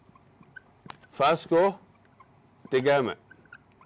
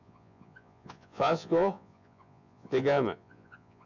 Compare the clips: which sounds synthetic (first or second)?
second